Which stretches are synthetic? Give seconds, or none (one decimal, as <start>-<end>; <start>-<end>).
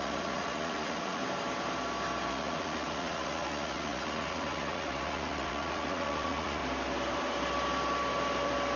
0.0-1.2; 2.3-6.6